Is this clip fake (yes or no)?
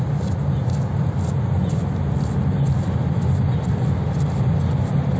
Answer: no